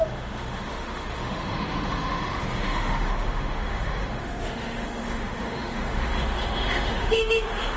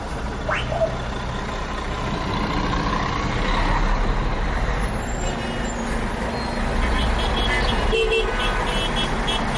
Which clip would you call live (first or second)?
second